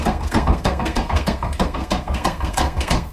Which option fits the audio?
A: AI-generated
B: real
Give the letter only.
A